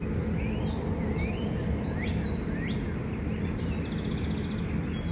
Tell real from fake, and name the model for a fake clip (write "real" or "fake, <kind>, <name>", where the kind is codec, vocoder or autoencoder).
real